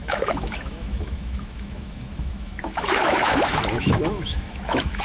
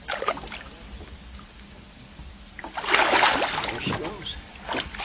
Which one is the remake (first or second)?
first